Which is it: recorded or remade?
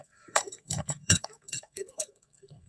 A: remade